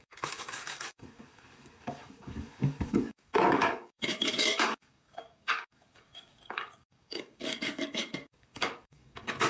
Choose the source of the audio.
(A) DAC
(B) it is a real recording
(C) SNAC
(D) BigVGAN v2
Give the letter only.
A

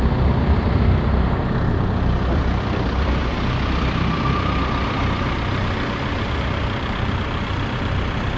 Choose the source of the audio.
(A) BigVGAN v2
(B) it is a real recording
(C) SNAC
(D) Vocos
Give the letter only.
A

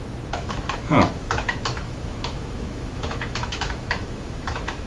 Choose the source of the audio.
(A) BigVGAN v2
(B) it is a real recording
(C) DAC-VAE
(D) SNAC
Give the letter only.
C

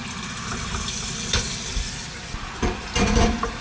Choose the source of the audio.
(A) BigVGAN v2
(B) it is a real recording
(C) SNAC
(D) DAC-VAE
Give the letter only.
A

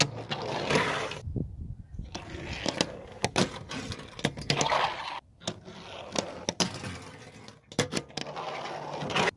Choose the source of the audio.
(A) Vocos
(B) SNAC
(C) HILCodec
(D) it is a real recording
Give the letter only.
D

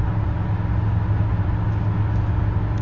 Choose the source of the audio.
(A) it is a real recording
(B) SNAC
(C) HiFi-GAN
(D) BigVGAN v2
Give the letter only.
A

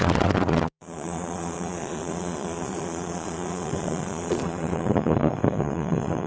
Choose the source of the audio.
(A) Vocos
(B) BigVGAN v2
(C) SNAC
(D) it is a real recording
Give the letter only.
A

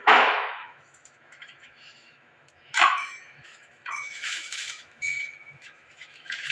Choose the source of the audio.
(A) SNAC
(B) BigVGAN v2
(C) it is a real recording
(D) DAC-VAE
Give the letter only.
D